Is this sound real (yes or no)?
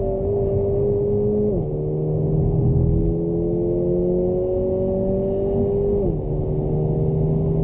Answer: yes